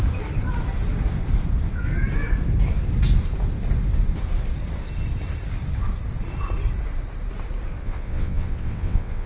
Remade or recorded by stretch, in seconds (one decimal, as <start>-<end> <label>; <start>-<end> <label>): 0.0-7.8 recorded; 7.8-9.3 remade

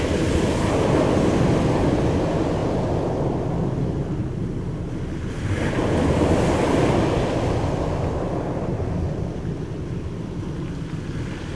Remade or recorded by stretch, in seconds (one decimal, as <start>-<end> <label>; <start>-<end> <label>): 0.0-11.6 recorded

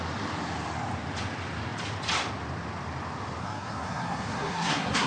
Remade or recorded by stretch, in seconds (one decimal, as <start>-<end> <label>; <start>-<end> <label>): 0.0-3.4 recorded; 3.4-5.1 remade

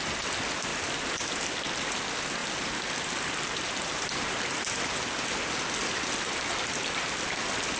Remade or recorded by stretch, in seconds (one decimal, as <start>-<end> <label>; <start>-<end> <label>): 0.0-7.8 recorded

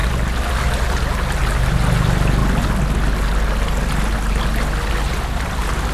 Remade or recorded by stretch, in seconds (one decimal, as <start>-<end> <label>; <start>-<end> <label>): 0.0-5.9 recorded

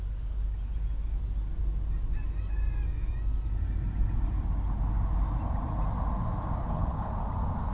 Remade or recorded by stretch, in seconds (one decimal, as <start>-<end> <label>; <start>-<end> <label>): 0.0-6.6 recorded; 6.6-7.1 remade; 7.1-7.7 recorded

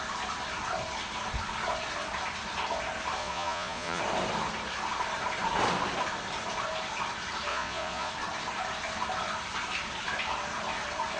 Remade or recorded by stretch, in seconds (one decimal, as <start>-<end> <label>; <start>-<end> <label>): 0.0-3.2 recorded; 3.2-4.0 remade; 4.0-7.5 recorded; 7.5-8.1 remade; 8.1-11.2 recorded

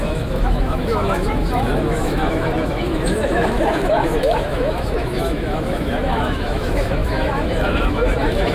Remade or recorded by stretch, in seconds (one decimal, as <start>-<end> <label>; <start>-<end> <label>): 0.0-8.5 remade